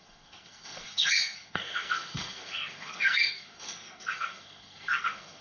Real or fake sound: fake